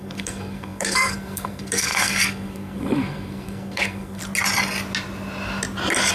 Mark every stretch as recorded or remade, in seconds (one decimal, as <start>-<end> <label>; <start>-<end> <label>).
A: 0.0-4.2 remade; 4.2-6.1 recorded